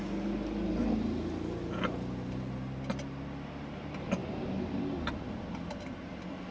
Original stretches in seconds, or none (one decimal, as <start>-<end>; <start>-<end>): 0.0-6.5